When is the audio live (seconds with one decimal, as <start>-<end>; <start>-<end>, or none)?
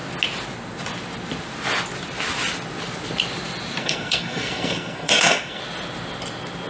0.0-3.8; 5.6-6.7